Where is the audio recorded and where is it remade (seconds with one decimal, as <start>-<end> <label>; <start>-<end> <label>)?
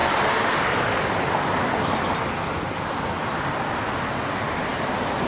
0.0-5.3 recorded